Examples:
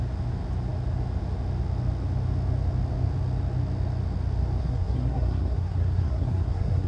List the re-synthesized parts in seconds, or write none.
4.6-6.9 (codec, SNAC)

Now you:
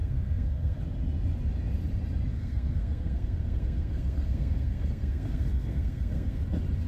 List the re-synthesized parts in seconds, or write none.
0.0-0.8 (codec, SNAC); 2.3-6.4

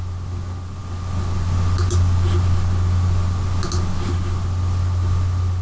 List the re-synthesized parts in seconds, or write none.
none

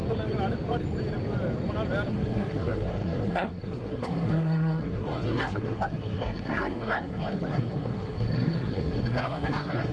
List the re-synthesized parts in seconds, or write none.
2.1-9.9 (codec, SNAC)

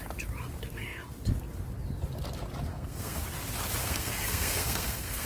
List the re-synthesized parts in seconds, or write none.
2.7-3.2 (codec, SNAC); 3.8-5.3